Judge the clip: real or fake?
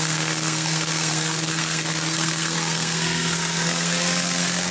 fake